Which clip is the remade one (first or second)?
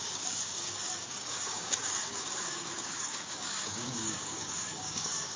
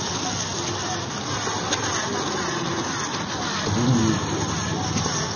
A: first